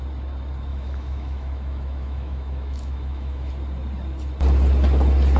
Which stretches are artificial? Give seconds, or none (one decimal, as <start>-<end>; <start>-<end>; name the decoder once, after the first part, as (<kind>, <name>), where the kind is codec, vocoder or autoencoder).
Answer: 0.7-3.5 (autoencoder, DAC-VAE)